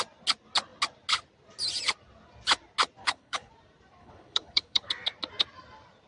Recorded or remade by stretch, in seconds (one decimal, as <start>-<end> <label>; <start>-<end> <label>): 0.0-3.0 recorded; 3.0-3.5 remade; 3.5-4.0 recorded; 4.0-4.9 remade; 4.9-6.1 recorded